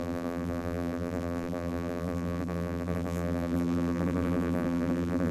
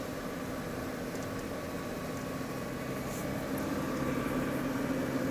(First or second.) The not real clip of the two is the first